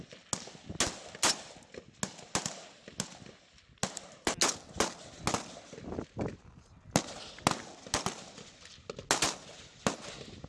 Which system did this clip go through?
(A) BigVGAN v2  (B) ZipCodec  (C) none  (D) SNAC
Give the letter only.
C